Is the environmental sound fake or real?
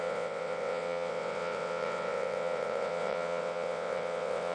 fake